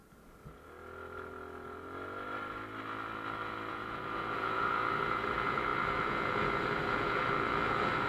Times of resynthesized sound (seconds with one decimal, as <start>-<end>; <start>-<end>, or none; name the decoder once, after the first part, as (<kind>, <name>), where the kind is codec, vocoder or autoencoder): 3.7-8.1 (vocoder, Vocos)